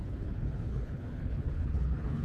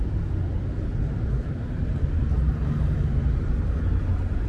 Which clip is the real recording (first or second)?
second